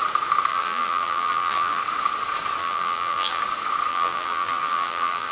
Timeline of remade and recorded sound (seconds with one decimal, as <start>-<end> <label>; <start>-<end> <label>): 0.0-0.5 recorded; 0.5-1.8 remade; 1.8-2.6 recorded; 2.6-3.4 remade; 3.4-3.9 recorded; 3.9-5.3 remade